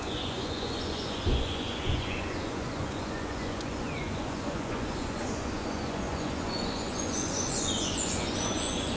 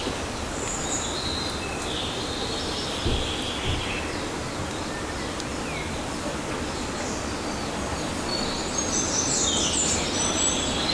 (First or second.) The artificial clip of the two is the first